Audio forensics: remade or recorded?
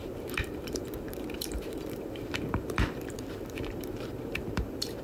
remade